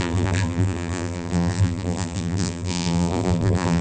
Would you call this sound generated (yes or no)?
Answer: yes